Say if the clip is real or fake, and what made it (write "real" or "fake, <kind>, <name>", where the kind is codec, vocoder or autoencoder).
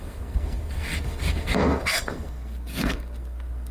fake, codec, SNAC